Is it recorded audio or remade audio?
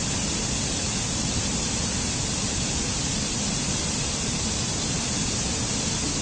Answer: recorded